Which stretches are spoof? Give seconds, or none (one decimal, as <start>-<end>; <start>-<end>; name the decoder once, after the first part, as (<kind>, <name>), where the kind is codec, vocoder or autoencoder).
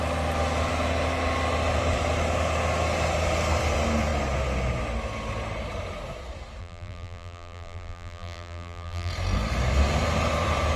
6.6-9.1 (vocoder, BigVGAN v2)